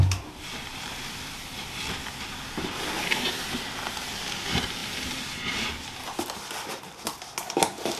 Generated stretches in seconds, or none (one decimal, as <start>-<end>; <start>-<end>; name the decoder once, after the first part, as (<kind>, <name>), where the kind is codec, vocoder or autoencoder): none